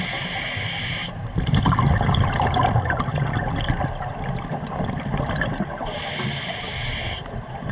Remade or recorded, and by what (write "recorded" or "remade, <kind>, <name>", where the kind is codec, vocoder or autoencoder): recorded